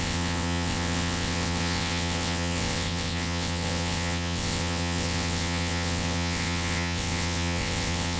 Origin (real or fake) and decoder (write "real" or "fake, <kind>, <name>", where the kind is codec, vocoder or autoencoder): fake, vocoder, WaveNeXt